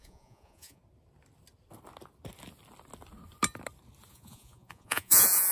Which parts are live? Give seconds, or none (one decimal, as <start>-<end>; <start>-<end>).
0.8-4.1